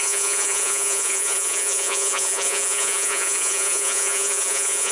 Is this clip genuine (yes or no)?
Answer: no